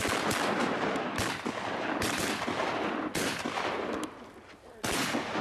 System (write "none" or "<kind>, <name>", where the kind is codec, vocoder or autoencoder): none